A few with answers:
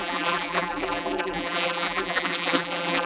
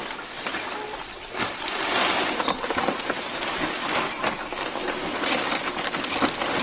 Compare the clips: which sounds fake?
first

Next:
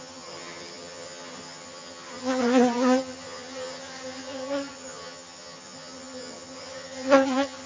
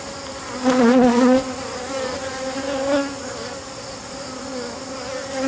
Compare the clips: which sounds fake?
first